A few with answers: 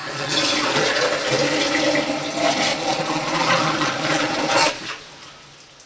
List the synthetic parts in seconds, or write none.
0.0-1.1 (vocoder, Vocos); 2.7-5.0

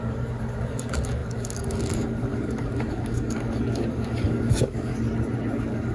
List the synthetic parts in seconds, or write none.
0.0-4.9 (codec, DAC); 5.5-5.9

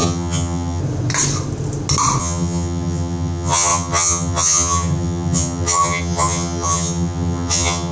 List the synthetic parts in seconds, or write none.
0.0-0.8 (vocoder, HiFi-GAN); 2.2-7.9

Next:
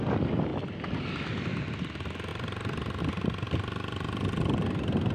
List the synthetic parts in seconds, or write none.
0.5-1.4 (vocoder, BigVGAN v2); 2.3-3.0